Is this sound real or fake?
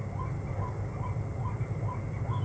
real